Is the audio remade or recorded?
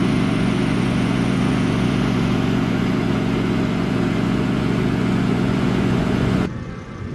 remade